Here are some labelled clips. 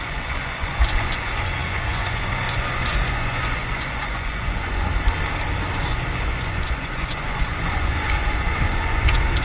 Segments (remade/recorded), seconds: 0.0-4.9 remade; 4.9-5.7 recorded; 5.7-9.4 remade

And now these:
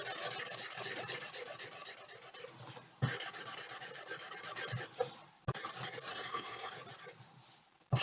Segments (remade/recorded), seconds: 0.0-6.1 recorded; 6.1-6.7 remade; 6.7-8.0 recorded

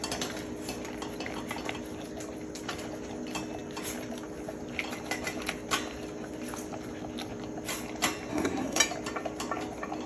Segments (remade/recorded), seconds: 0.0-8.3 recorded; 8.3-8.8 remade; 8.8-10.1 recorded

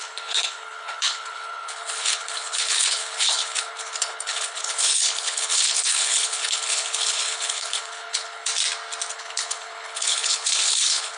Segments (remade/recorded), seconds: 0.0-8.5 remade; 8.5-9.1 recorded; 9.1-11.2 remade

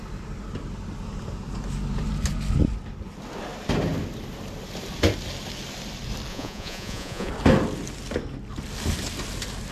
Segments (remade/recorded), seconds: 0.0-6.3 recorded; 6.3-7.3 remade; 7.3-9.7 recorded

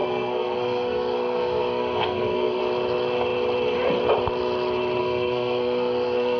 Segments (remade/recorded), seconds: 0.0-2.6 remade; 2.6-5.0 recorded; 5.0-6.4 remade

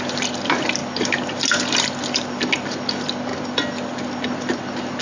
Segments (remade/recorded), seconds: 0.0-5.0 recorded

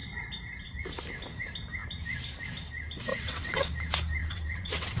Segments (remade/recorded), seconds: 0.0-3.1 recorded; 3.1-3.7 remade; 3.7-4.2 recorded; 4.2-5.0 remade